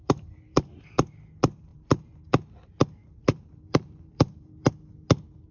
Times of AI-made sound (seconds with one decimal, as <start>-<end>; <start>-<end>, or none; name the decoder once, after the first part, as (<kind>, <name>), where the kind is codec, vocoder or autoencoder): 0.0-0.8 (vocoder, BigVGAN v2); 1.7-2.2; 3.0-4.7